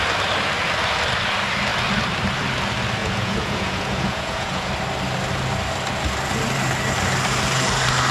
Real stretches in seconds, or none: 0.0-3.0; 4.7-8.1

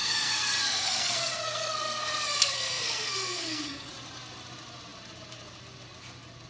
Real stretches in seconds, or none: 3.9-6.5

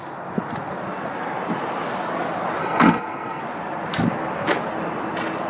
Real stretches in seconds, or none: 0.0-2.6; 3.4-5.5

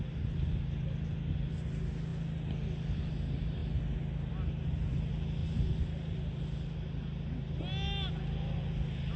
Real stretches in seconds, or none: 0.0-9.2

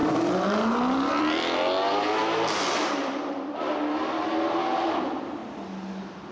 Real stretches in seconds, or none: 0.0-1.2; 2.2-2.9; 5.4-6.3

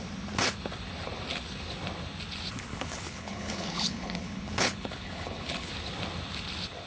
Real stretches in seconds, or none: 0.0-2.7; 5.7-6.9

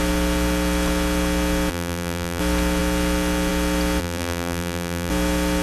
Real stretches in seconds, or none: 0.0-1.7; 2.4-4.0; 5.1-5.6

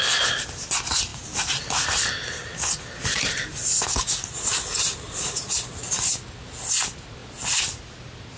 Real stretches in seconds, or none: 0.0-8.4